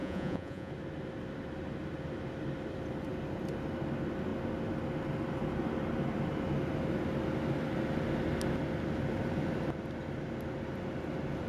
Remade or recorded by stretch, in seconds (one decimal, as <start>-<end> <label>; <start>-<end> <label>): 0.0-0.7 remade; 0.7-11.5 recorded